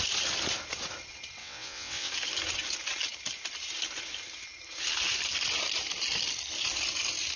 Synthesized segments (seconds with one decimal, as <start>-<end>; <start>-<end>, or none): 1.4-2.1